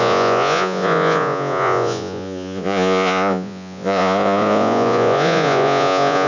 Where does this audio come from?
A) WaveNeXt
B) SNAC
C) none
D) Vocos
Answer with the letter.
D